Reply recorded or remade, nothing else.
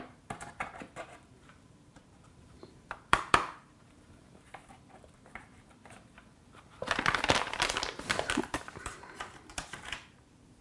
remade